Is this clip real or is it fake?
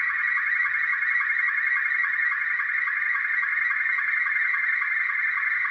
real